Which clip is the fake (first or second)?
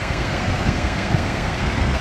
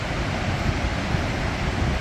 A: first